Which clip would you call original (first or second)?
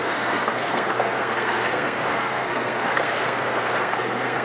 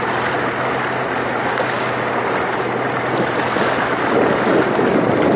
second